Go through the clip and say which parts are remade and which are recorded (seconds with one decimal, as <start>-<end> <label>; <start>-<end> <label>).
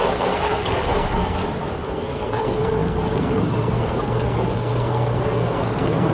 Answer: 0.0-1.4 remade; 1.4-1.9 recorded; 1.9-6.1 remade